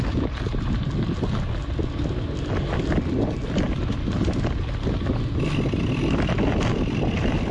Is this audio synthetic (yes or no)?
no